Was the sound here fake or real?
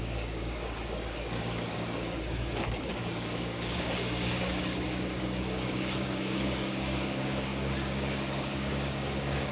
fake